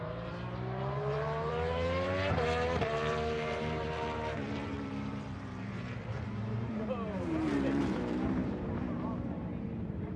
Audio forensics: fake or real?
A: fake